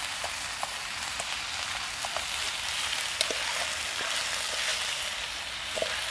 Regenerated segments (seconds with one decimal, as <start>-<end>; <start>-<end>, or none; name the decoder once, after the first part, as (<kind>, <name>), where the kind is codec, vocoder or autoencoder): none